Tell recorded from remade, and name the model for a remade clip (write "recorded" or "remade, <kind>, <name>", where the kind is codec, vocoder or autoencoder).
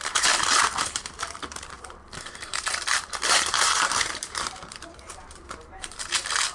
remade, vocoder, BigVGAN v2